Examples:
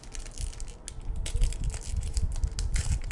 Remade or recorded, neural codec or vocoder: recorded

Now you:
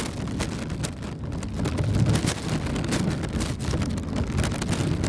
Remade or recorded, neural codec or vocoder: recorded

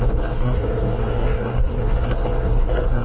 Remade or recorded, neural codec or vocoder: remade, codec, SNAC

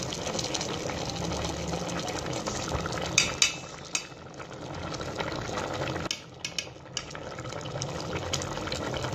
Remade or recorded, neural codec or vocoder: recorded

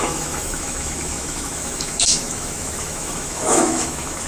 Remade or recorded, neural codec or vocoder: remade, autoencoder, DAC-VAE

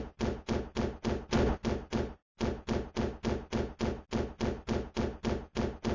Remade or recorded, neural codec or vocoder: recorded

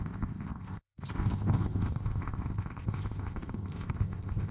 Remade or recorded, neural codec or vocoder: remade, codec, ZipCodec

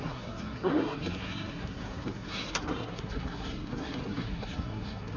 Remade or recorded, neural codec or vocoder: remade, codec, SNAC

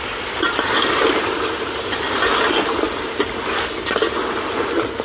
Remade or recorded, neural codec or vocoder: recorded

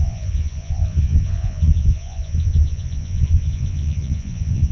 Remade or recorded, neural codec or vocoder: remade, vocoder, Vocos